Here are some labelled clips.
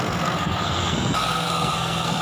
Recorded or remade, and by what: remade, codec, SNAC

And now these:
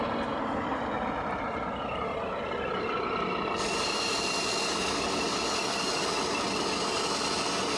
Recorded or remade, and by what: recorded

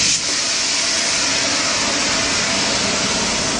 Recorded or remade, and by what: recorded